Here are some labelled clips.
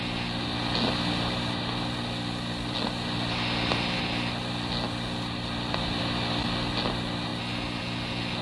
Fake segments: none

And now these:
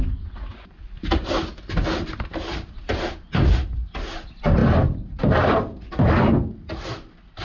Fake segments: 0.5-3.6 (vocoder, BigVGAN v2)

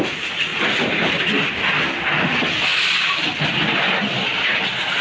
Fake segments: none

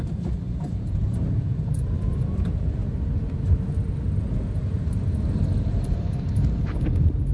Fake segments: 0.0-2.8 (vocoder, BigVGAN v2); 5.6-7.3

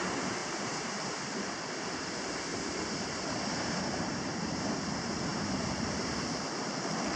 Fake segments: 0.4-1.6 (vocoder, BigVGAN v2); 2.5-4.7

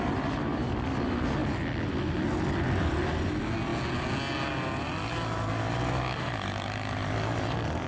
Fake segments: none